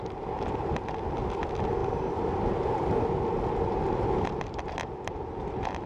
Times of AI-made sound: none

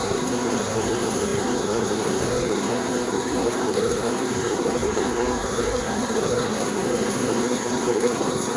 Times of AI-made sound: 0.0-8.6 (codec, SNAC)